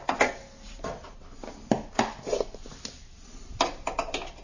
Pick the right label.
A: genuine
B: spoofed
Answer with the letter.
A